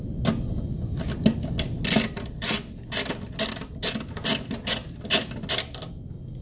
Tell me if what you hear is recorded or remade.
recorded